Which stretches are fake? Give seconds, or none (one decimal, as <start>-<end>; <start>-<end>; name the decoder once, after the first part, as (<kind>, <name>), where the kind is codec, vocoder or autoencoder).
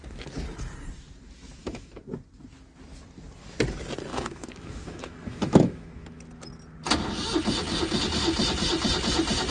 1.6-2.1 (autoencoder, DAC-VAE); 4.1-6.2